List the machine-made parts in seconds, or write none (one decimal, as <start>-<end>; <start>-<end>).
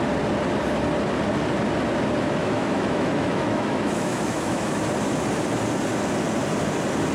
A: 2.4-4.8